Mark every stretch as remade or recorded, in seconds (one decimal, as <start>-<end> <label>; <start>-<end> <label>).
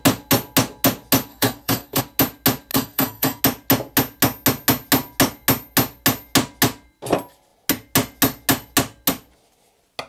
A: 0.0-1.3 recorded; 1.3-2.0 remade; 2.0-2.7 recorded; 2.7-3.4 remade; 3.4-10.1 recorded